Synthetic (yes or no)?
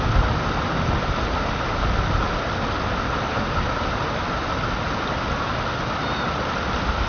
no